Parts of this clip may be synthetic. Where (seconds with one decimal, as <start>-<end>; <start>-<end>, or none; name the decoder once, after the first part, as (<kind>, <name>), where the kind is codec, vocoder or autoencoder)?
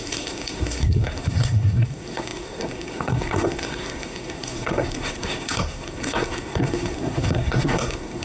0.0-8.2 (codec, SNAC)